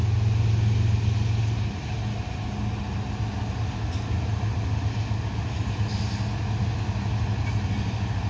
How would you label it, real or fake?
real